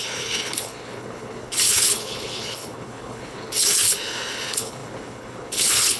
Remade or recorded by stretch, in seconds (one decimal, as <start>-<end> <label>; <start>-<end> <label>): 0.0-6.0 remade